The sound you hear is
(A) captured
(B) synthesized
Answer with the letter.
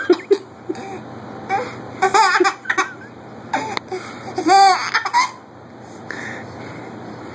A